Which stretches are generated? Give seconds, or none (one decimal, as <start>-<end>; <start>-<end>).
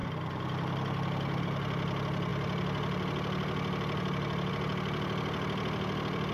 none